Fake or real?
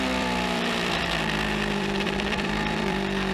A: fake